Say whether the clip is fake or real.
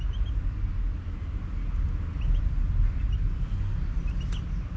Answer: real